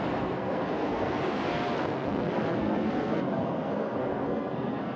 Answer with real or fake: fake